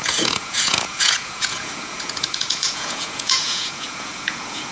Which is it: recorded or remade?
remade